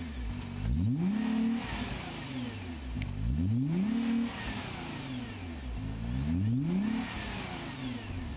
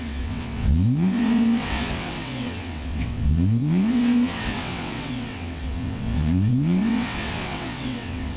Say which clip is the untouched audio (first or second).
first